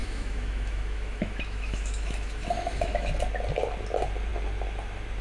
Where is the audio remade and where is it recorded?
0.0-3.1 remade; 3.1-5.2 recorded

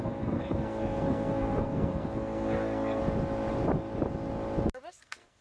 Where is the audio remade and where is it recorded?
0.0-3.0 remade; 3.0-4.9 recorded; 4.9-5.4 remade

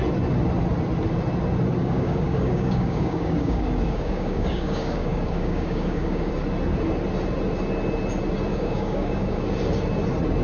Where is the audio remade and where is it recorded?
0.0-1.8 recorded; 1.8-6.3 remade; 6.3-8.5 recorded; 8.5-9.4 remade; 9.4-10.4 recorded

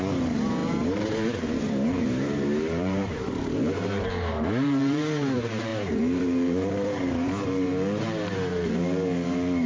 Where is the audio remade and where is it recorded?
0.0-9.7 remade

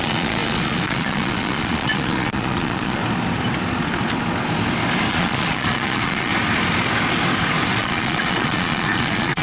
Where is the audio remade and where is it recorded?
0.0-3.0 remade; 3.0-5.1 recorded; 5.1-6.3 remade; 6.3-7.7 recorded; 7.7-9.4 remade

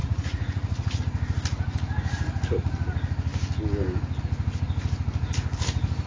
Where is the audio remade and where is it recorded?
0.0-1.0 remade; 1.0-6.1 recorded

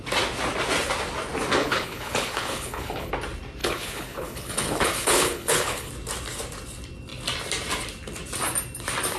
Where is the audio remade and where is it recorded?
0.0-1.6 recorded; 1.6-3.1 remade; 3.1-3.6 recorded; 3.6-5.9 remade; 5.9-9.2 recorded

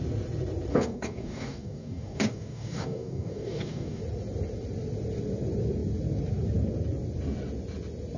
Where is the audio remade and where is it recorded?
0.0-0.7 recorded; 0.7-4.0 remade; 4.0-8.2 recorded